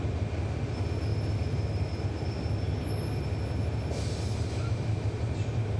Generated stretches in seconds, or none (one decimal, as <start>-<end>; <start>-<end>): none